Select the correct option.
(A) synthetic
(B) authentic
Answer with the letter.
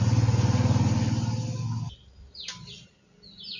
B